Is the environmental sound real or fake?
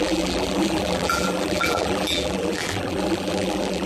fake